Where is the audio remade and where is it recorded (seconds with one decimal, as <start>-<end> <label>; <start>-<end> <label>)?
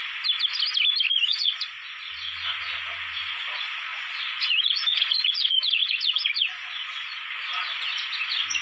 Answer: 0.0-1.1 recorded; 1.1-8.6 remade